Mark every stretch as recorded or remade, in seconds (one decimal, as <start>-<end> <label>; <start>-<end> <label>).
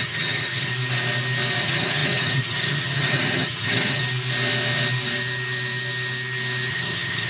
0.0-0.7 remade; 0.7-1.6 recorded; 1.6-4.0 remade; 4.0-6.7 recorded; 6.7-7.3 remade